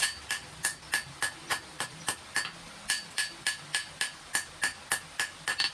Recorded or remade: recorded